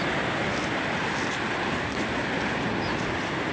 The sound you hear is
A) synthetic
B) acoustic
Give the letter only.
B